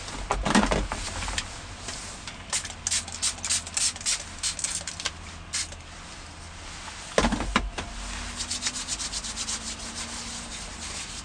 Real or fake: real